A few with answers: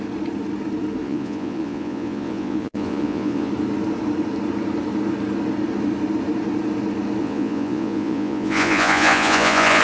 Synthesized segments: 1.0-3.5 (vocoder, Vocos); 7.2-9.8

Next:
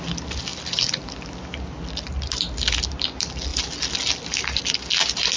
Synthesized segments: none

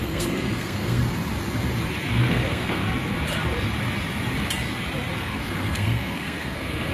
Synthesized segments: 0.0-1.0 (codec, SNAC); 2.1-2.8; 5.2-6.9

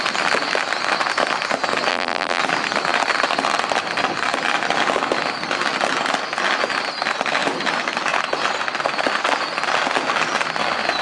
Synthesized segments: 1.9-2.4 (vocoder, BigVGAN v2)

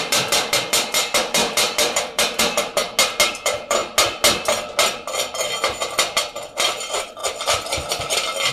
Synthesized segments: 0.0-2.8 (vocoder, BigVGAN v2); 3.3-3.8; 6.4-8.5